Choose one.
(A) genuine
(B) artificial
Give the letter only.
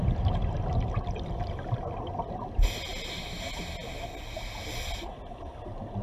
A